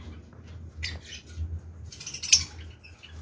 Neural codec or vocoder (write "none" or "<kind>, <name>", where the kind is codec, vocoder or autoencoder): none